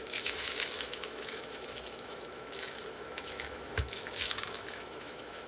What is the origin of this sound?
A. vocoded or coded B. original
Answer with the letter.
A